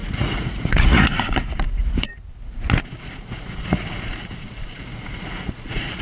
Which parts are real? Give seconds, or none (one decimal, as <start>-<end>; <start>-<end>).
2.1-2.8